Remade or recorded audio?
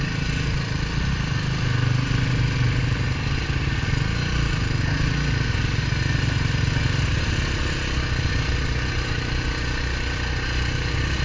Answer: recorded